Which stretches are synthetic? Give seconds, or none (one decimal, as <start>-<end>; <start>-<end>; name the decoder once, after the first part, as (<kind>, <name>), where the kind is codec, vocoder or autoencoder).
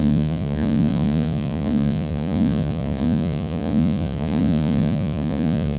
0.0-5.8 (vocoder, Vocos)